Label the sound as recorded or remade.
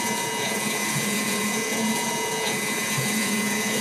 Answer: remade